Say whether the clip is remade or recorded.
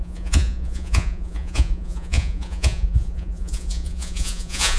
remade